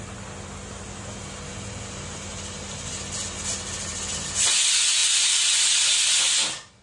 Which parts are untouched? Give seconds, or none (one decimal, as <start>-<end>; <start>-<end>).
0.0-6.8